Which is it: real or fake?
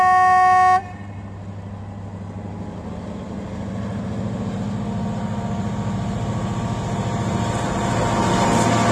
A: real